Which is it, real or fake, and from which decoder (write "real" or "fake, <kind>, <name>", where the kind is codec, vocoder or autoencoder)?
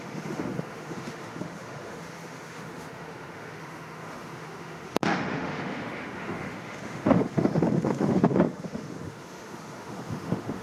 fake, autoencoder, DAC-VAE